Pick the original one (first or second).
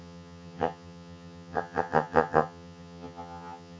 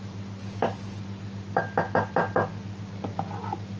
second